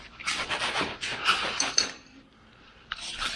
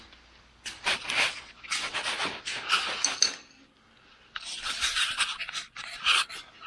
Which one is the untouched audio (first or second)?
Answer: second